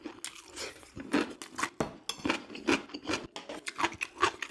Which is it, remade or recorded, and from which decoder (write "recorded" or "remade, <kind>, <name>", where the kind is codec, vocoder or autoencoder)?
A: recorded